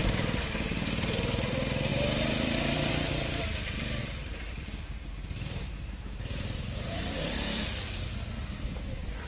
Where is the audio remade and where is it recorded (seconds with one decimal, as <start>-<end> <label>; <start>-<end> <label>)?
0.0-9.3 remade